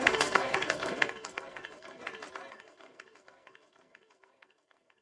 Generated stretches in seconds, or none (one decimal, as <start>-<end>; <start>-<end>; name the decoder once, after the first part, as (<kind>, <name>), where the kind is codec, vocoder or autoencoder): 0.0-2.0 (codec, SNAC); 2.5-5.0